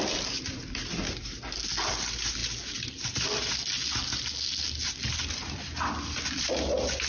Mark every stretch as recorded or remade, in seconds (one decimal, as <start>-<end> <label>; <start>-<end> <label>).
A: 0.0-7.1 recorded